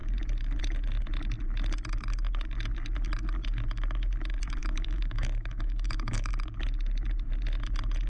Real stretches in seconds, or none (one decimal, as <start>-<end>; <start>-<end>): 0.0-4.6; 6.3-8.1